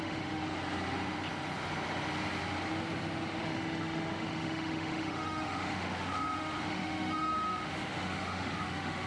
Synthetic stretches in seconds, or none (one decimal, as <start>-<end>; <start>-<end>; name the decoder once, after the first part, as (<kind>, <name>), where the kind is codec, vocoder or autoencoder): 0.0-0.4 (autoencoder, DAC-VAE); 3.4-9.1